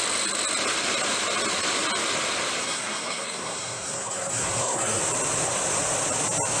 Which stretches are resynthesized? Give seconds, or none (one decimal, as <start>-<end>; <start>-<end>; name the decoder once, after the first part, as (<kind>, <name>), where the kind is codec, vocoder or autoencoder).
2.6-5.0 (codec, SNAC)